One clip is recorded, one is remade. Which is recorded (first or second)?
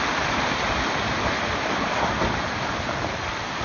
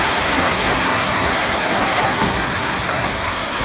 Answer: first